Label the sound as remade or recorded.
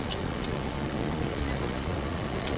remade